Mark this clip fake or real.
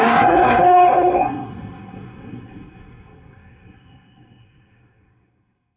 fake